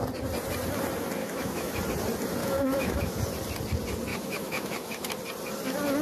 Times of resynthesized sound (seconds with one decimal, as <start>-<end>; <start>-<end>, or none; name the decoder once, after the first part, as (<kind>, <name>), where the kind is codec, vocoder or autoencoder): 1.2-1.8 (autoencoder, DAC-VAE); 2.4-3.2; 4.1-5.1